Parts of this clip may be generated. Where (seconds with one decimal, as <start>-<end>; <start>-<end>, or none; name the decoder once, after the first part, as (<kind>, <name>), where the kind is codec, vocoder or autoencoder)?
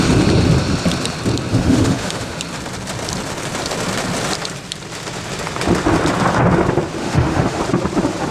1.5-2.4 (autoencoder, DAC-VAE); 7.0-7.6